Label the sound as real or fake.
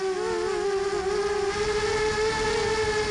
real